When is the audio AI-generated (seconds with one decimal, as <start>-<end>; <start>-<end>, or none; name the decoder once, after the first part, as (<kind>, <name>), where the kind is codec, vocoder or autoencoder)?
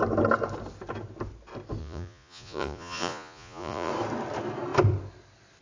1.8-3.9 (vocoder, Vocos)